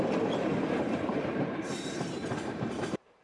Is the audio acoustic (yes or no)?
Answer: no